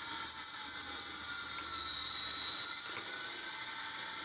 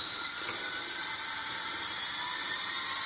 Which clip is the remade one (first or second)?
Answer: second